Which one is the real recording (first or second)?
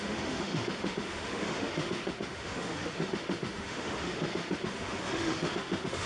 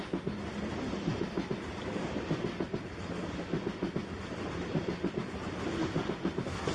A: second